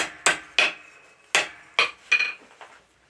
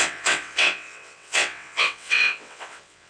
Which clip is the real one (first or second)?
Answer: first